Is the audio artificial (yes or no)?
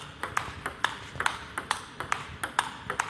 no